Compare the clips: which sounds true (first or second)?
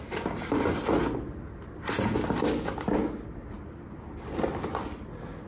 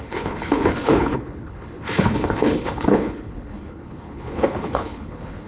first